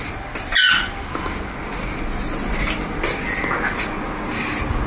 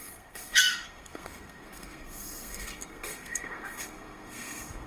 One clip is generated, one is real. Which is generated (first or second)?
second